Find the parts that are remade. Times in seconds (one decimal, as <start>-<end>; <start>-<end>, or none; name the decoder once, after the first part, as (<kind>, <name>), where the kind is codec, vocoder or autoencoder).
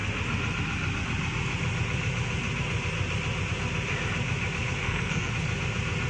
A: 4.8-5.3 (codec, SNAC)